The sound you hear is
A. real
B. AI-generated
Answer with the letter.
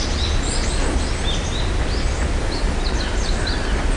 A